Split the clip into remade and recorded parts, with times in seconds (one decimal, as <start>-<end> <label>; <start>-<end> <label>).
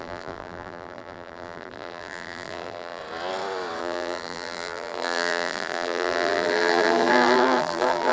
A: 0.0-3.0 remade; 3.0-3.8 recorded; 3.8-8.1 remade